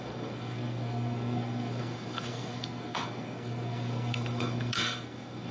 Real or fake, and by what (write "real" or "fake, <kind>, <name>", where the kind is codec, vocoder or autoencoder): fake, codec, SNAC